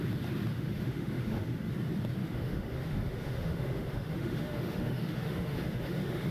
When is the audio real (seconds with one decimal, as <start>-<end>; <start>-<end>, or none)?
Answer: 0.0-0.5; 1.7-2.2

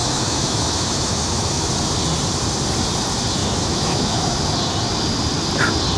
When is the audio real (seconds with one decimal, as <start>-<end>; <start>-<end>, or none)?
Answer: 1.7-3.4; 4.4-6.0

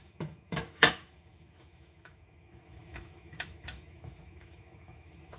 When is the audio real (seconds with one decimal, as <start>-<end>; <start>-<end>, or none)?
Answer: none

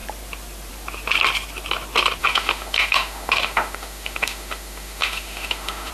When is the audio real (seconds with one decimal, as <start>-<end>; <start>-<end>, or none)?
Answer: 0.0-2.2

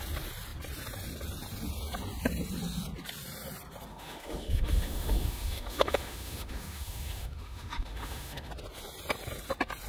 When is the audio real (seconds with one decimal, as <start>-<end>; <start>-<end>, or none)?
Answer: 0.0-3.9; 8.5-9.9

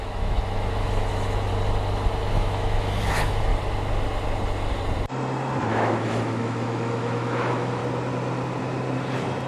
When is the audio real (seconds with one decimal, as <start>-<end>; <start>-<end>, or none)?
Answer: 1.5-2.3; 3.5-5.7; 7.8-9.5